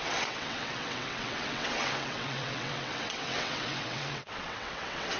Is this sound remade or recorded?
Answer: remade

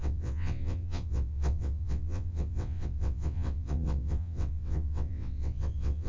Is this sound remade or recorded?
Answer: remade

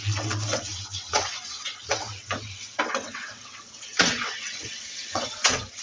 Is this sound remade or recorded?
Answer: remade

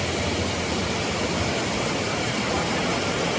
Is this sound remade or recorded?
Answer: recorded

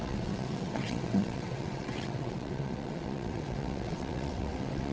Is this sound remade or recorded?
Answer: remade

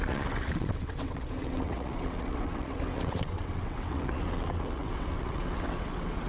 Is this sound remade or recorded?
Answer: remade